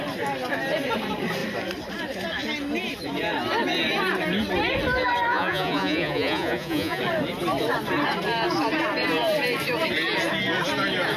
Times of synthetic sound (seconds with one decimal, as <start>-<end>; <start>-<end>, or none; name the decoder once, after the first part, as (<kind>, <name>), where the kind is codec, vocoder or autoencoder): 5.3-7.0 (vocoder, Vocos)